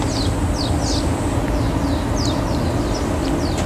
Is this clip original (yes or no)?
yes